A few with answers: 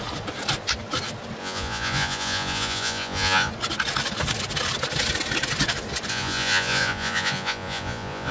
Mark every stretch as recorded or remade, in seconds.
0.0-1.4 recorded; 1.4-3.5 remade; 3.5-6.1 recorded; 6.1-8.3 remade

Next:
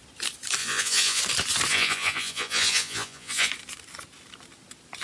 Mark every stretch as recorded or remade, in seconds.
0.0-0.6 recorded; 0.6-1.2 remade; 1.2-1.7 recorded; 1.7-3.5 remade; 3.5-5.0 recorded

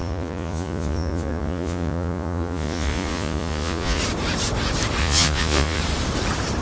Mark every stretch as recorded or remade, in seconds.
0.0-4.0 remade; 4.0-5.0 recorded; 5.0-5.8 remade; 5.8-6.6 recorded